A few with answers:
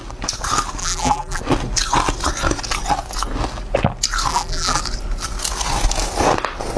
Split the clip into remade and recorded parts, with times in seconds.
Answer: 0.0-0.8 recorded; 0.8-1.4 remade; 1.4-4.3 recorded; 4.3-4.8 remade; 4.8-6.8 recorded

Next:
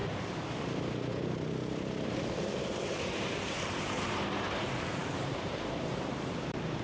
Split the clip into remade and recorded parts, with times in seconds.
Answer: 0.0-6.8 remade